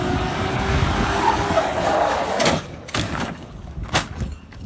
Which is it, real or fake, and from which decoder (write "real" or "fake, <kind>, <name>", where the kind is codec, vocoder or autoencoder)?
fake, codec, DAC